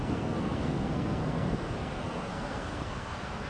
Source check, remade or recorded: remade